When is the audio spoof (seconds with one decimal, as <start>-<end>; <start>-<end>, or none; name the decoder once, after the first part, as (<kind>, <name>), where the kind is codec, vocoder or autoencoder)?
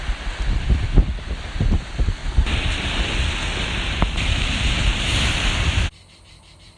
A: 0.0-2.2 (vocoder, BigVGAN v2); 4.3-4.9; 6.1-6.8